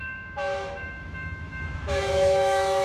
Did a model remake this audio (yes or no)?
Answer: yes